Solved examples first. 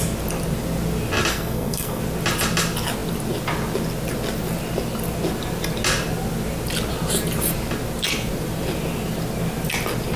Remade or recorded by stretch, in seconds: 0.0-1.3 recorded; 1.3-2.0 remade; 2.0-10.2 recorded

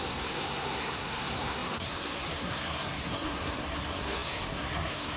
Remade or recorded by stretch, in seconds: 0.0-5.2 remade

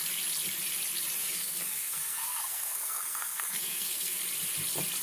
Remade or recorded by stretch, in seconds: 0.0-1.2 recorded; 1.2-4.2 remade; 4.2-5.0 recorded

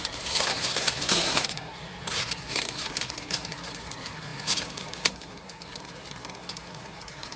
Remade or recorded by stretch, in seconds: 0.0-7.4 remade